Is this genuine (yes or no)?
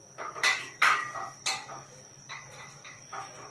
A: no